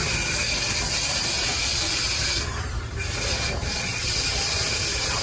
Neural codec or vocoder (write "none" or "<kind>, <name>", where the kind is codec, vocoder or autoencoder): none